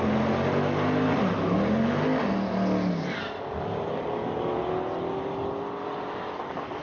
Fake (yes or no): no